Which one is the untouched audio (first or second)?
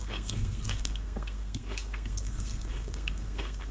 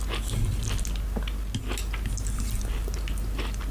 second